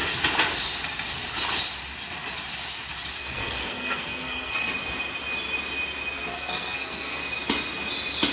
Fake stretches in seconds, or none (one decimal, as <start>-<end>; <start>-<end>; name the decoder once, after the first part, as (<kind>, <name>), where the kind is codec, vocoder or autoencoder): 3.2-4.7 (codec, SNAC); 6.3-7.2